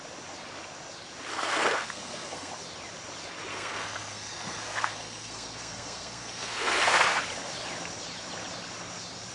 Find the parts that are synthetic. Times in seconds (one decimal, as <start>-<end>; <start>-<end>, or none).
1.3-2.5; 3.5-7.2